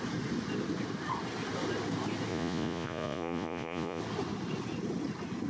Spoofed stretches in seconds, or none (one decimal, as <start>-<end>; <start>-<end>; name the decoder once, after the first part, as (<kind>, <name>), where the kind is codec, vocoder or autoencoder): 2.3-4.0 (vocoder, Vocos)